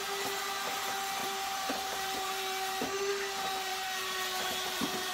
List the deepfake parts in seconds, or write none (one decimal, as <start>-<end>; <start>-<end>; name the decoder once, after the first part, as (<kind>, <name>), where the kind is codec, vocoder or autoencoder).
1.2-3.1 (vocoder, BigVGAN v2); 3.7-5.1